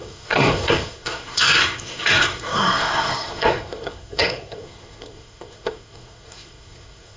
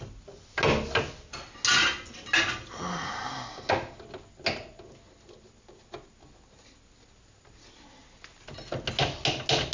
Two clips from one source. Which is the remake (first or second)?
first